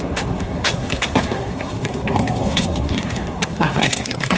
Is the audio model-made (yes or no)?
yes